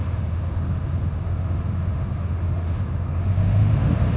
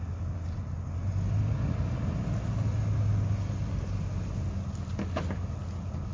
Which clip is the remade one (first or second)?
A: first